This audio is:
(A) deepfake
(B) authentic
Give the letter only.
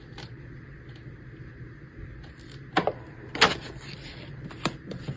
B